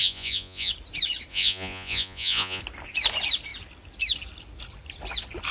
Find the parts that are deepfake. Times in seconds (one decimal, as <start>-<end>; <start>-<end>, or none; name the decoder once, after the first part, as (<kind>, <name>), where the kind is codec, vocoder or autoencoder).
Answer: 0.0-0.7 (vocoder, Vocos); 1.3-2.6